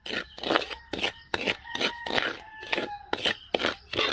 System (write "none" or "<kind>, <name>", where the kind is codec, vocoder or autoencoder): none